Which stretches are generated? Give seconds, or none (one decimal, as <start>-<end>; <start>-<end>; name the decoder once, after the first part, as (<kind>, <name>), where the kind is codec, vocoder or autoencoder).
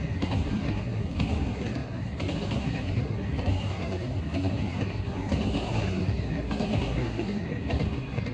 0.0-8.3 (codec, SNAC)